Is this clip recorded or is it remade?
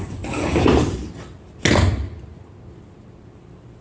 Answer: recorded